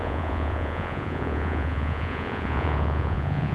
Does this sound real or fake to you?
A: fake